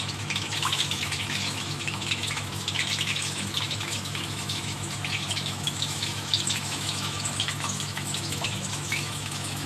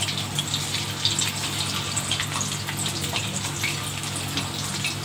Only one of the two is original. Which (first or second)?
second